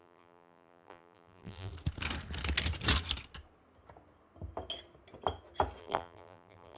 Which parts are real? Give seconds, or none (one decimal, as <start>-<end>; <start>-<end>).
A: 1.7-5.8